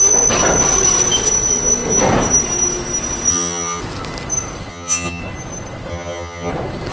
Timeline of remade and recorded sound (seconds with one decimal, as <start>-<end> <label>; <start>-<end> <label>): 0.0-3.3 recorded; 3.3-3.8 remade; 3.8-4.7 recorded; 4.7-5.2 remade; 5.2-5.9 recorded; 5.9-6.5 remade; 6.5-6.9 recorded